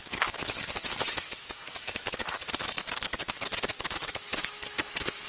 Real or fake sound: fake